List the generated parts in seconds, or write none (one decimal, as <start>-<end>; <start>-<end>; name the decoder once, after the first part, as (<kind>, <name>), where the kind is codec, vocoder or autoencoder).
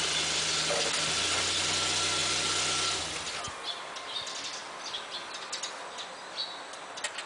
none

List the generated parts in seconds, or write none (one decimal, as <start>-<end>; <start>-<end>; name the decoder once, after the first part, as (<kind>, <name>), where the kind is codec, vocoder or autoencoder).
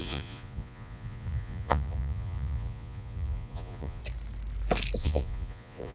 0.0-4.0 (vocoder, Vocos); 5.0-5.9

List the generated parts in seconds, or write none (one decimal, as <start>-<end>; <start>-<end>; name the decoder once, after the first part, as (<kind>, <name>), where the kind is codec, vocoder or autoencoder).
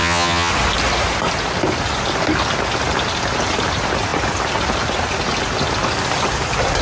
0.0-0.5 (vocoder, HiFi-GAN)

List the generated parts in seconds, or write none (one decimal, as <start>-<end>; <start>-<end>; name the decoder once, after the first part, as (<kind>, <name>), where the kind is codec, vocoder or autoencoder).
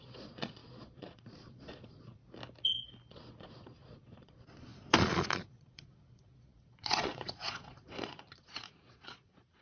0.0-2.2 (vocoder, Vocos); 3.1-9.6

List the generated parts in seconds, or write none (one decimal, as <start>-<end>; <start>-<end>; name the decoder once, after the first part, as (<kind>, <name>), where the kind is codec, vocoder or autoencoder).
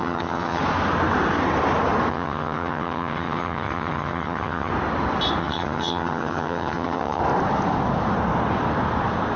0.0-0.6 (vocoder, HiFi-GAN); 2.1-4.7; 5.4-7.2